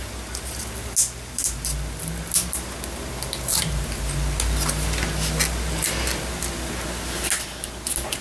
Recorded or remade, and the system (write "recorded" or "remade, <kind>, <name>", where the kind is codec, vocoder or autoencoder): recorded